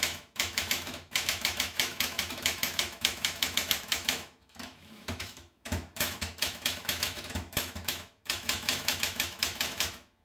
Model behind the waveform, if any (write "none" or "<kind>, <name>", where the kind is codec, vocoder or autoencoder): autoencoder, DAC-VAE